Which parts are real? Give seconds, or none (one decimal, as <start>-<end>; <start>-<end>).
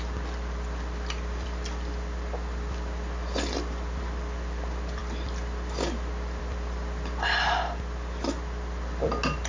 0.0-9.5